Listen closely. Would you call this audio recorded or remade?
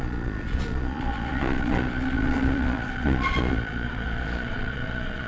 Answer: remade